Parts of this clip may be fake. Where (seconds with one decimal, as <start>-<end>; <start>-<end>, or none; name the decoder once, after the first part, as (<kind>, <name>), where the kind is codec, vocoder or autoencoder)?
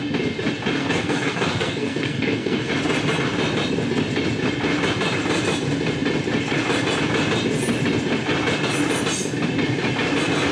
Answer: 0.8-2.7 (codec, SNAC)